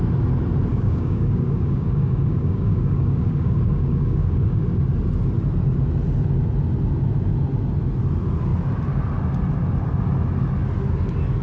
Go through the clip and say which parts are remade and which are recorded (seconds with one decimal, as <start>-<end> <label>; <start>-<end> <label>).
0.0-0.7 recorded; 0.7-4.6 remade; 4.6-11.4 recorded